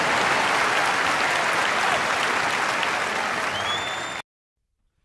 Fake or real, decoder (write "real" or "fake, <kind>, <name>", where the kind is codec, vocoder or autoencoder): real